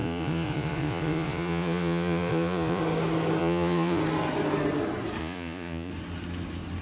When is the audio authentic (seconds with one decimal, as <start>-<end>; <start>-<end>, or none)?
2.8-3.4; 4.0-5.2; 5.9-6.8